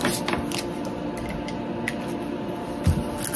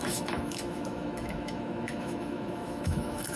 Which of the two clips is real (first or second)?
first